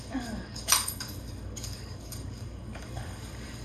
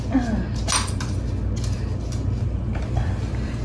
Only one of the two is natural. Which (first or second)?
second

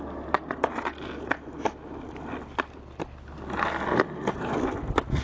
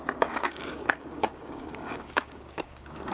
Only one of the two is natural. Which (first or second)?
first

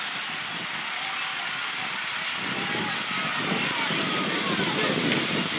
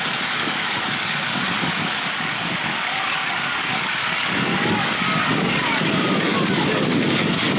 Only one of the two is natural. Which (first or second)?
first